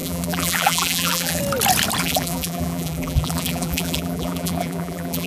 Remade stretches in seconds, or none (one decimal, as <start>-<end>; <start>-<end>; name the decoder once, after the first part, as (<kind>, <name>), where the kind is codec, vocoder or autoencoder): 0.0-1.4 (vocoder, BigVGAN v2); 2.0-5.3